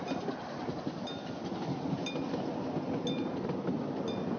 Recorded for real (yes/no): yes